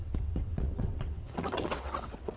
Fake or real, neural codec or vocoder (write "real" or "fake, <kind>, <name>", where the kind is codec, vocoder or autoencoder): fake, vocoder, WaveNeXt